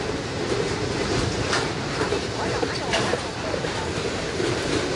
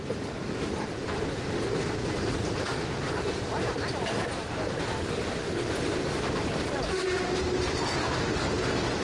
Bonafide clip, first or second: second